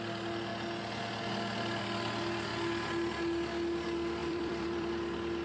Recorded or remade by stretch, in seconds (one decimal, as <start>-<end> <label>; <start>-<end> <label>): 0.0-4.2 recorded; 4.2-4.9 remade; 4.9-5.4 recorded